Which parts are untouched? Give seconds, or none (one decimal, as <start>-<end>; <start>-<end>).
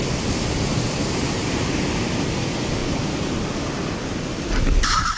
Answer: 0.0-5.2